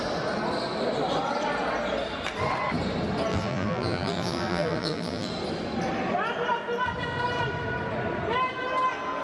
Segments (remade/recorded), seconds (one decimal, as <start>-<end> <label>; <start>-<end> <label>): 0.0-3.3 recorded; 3.3-5.3 remade; 5.3-9.2 recorded